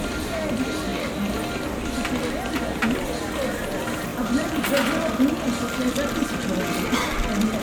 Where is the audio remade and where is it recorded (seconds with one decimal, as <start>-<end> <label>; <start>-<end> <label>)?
0.0-4.1 recorded; 4.1-4.7 remade; 4.7-7.6 recorded